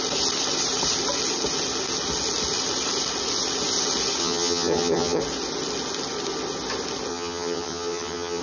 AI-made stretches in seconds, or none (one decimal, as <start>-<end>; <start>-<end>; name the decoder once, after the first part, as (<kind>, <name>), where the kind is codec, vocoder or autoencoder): 4.2-5.2 (vocoder, HiFi-GAN); 7.1-8.4